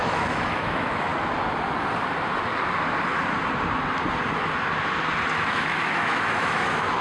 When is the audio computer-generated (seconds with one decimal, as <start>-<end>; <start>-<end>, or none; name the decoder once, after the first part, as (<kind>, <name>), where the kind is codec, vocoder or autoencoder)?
0.0-1.1 (autoencoder, DAC-VAE); 5.3-7.0